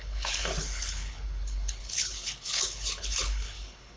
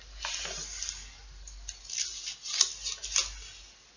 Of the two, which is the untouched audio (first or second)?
second